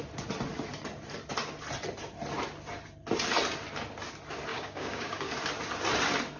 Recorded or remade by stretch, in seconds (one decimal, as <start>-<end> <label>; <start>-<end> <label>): 0.0-4.5 recorded; 4.5-5.3 remade; 5.3-6.4 recorded